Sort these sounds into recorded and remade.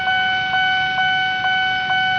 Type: recorded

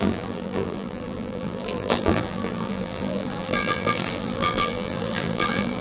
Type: remade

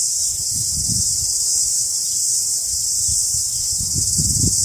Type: remade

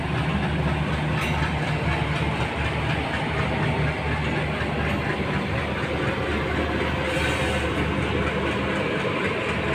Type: recorded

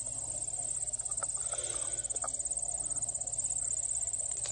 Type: recorded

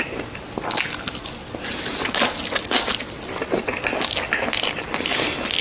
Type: recorded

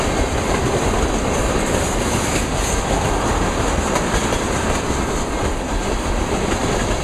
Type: remade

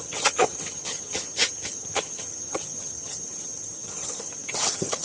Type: remade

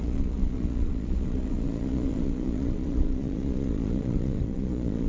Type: remade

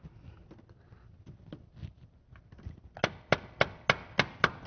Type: recorded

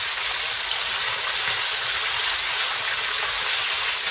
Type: recorded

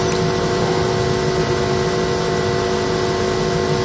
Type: recorded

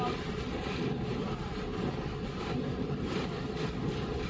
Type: recorded